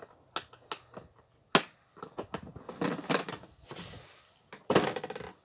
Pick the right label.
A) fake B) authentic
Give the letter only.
B